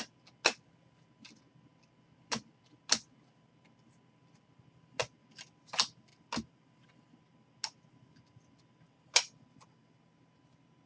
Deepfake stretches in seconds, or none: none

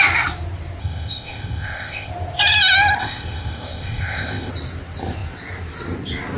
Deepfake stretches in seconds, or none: 0.8-2.1; 3.0-4.5

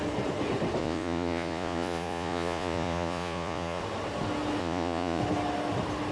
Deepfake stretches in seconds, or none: 0.8-3.8; 4.6-5.2

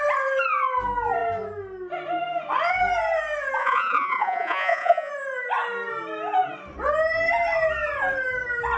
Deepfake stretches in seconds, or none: 3.6-5.1

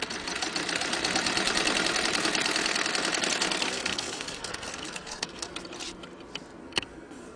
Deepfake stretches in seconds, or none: 3.7-5.5; 6.6-7.4